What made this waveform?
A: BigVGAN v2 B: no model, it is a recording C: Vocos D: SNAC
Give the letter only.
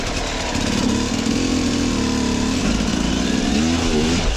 B